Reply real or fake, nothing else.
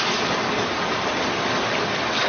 real